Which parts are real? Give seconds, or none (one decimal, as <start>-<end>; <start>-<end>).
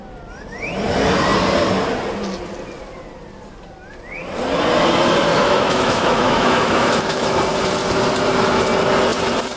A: 0.0-5.3; 7.4-9.6